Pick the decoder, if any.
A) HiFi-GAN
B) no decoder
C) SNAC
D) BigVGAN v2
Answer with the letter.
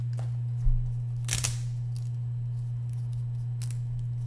B